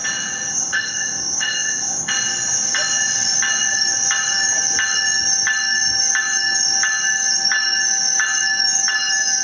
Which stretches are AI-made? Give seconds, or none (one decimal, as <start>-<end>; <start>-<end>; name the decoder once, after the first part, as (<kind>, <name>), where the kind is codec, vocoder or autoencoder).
0.5-2.1 (codec, ZipCodec)